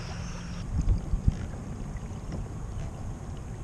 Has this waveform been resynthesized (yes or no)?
no